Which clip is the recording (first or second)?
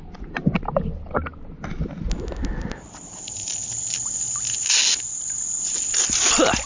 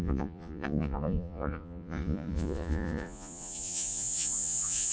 first